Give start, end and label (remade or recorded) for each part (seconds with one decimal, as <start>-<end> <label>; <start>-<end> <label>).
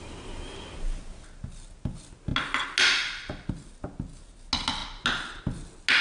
0.0-6.0 recorded